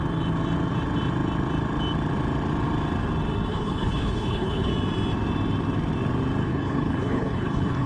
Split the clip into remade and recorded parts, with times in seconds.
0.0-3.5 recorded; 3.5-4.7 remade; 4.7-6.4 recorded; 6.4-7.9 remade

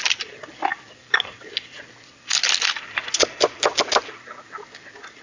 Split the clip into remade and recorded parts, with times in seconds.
0.0-5.2 recorded

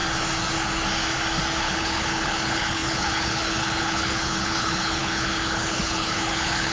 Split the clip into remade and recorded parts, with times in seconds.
0.0-1.6 recorded; 1.6-6.7 remade